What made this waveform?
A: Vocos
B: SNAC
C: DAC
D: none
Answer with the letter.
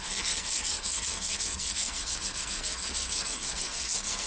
B